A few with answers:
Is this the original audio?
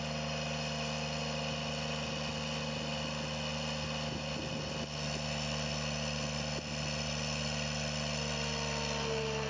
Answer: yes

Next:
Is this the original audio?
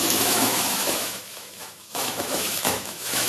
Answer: no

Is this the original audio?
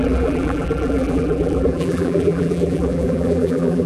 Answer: no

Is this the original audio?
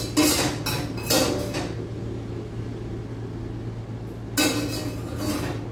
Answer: yes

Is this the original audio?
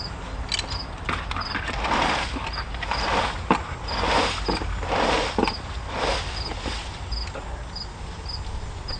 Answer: yes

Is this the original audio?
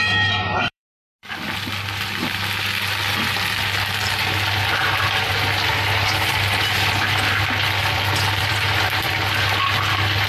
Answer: no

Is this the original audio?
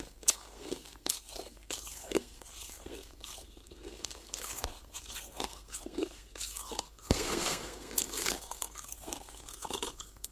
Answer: no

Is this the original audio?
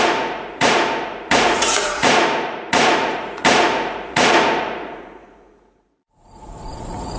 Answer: no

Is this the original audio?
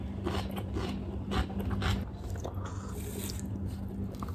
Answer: yes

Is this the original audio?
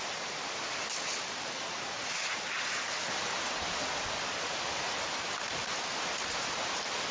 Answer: no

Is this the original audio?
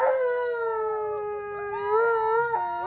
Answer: yes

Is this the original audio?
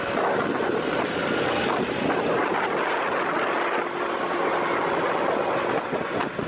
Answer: yes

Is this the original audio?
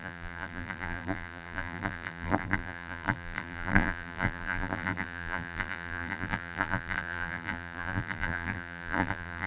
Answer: no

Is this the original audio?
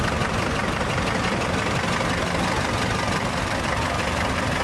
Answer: yes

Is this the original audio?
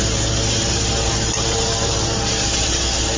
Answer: yes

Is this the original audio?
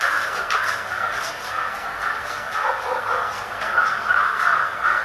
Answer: no